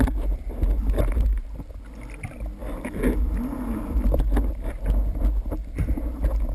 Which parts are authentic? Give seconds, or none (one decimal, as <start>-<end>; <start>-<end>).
0.0-6.5